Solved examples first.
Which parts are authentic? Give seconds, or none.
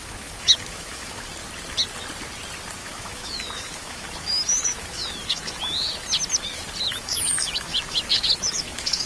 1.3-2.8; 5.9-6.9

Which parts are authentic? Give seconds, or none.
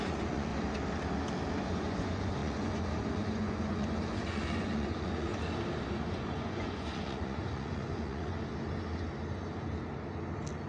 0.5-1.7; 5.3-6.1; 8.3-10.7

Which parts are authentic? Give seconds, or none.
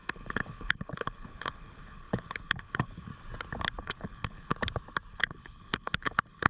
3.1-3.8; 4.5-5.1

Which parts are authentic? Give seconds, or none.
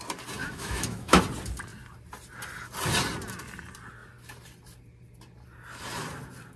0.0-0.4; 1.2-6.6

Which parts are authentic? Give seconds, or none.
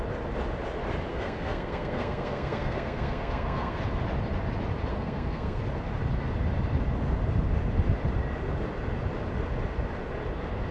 0.0-1.1; 3.8-4.9; 5.6-10.7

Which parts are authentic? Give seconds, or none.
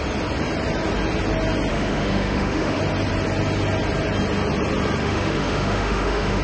0.0-1.7; 2.8-5.0